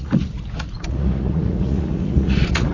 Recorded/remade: remade